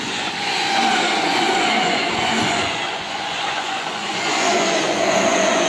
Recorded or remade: remade